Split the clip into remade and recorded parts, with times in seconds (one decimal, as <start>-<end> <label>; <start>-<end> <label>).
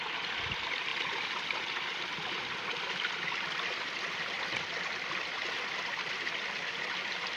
0.0-7.4 remade